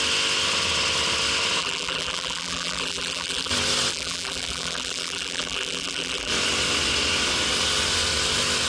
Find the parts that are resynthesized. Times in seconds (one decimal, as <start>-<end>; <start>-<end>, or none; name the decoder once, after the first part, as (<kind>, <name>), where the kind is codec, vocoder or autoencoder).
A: 1.6-3.5 (vocoder, BigVGAN v2); 3.9-6.3

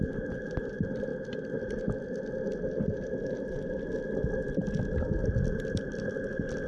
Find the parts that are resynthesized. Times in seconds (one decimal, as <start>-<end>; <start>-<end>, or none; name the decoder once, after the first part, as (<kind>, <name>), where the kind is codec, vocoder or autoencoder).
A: none

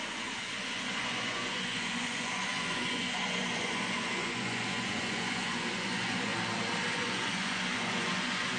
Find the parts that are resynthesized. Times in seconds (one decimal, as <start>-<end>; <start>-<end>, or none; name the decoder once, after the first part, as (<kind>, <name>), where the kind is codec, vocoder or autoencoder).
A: 0.0-6.3 (vocoder, Vocos); 6.9-8.6

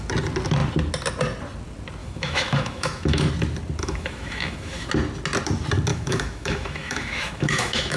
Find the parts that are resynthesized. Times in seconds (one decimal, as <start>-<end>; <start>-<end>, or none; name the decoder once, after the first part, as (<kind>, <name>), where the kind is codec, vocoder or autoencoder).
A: 2.0-3.3 (autoencoder, DAC-VAE); 3.8-4.9; 5.9-8.0

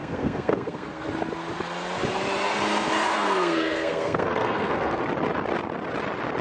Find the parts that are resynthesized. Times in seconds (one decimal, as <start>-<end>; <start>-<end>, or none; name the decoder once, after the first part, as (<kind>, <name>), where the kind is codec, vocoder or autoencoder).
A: 0.0-1.1 (codec, SNAC); 3.1-5.0

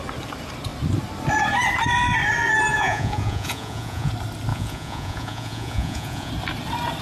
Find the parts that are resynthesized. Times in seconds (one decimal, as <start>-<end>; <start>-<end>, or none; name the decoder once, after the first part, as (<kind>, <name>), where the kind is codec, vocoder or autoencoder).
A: 2.7-4.1 (vocoder, Vocos); 4.5-6.3